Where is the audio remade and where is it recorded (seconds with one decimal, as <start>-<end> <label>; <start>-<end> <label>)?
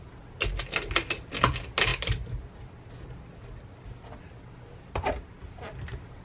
0.0-6.2 recorded